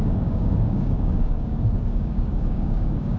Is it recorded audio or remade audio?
remade